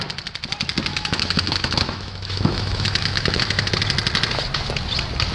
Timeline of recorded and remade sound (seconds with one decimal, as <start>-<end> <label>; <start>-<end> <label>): 0.0-0.9 recorded; 0.9-3.7 remade; 3.7-5.3 recorded